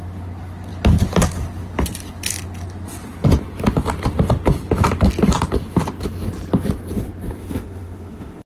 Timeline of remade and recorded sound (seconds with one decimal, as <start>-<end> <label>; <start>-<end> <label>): 0.0-7.4 recorded; 7.4-8.5 remade